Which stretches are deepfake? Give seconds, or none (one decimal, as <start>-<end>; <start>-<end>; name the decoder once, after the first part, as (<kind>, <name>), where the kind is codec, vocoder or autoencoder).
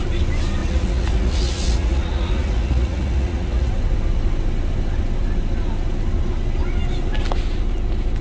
0.6-3.7 (vocoder, Vocos)